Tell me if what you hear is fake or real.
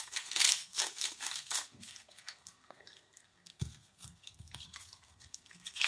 fake